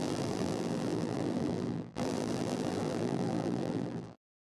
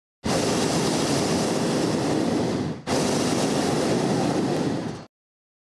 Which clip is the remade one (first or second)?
first